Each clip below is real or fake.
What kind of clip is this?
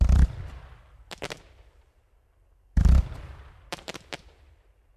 fake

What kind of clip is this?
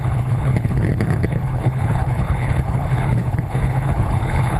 fake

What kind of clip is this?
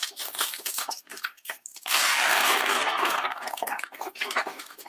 fake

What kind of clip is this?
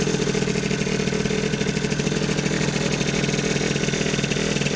real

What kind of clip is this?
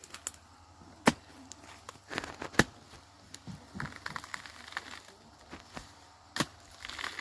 real